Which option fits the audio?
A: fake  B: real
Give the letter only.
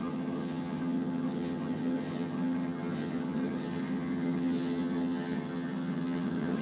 A